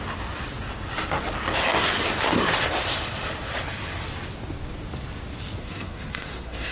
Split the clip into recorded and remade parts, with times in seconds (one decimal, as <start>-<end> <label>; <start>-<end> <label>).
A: 0.0-5.6 recorded; 5.6-6.7 remade